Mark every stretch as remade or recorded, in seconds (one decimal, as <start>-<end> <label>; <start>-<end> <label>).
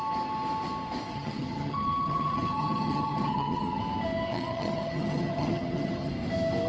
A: 0.0-1.1 recorded; 1.1-3.8 remade; 3.8-4.3 recorded; 4.3-6.1 remade; 6.1-6.7 recorded